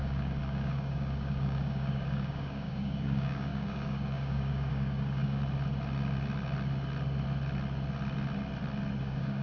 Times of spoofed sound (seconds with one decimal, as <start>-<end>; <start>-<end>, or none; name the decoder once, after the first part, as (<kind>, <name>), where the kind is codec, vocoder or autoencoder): 0.0-5.4 (codec, DAC); 9.0-9.4